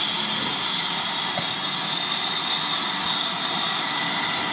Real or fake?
real